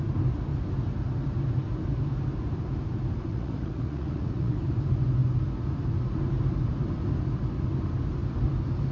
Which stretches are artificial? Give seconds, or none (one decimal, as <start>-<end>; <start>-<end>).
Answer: 3.3-4.6